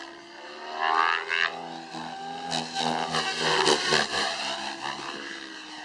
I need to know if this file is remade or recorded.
recorded